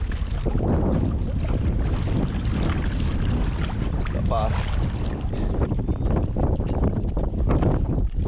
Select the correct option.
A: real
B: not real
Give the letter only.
A